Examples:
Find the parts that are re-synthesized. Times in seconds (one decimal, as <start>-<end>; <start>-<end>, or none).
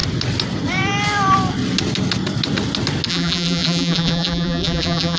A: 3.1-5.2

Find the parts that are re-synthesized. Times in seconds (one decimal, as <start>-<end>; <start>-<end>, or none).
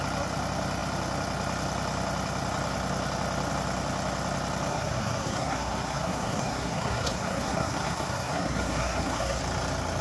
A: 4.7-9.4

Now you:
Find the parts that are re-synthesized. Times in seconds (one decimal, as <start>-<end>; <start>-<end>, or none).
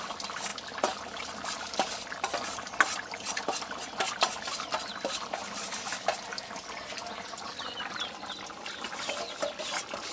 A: none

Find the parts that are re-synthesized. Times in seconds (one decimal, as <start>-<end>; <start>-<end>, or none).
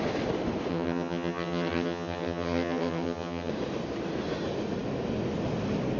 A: 0.7-3.5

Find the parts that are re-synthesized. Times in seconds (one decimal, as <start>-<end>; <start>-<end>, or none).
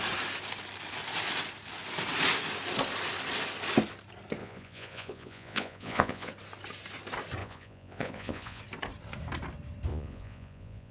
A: 4.4-6.3; 7.4-8.6; 9.9-10.9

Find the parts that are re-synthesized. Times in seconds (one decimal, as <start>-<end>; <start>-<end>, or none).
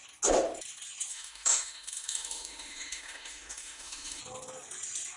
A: 1.1-4.2